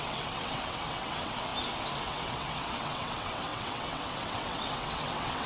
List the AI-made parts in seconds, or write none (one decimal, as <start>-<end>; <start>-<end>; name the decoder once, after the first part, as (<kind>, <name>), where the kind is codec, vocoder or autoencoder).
0.0-1.5 (vocoder, WaveNeXt); 2.0-5.5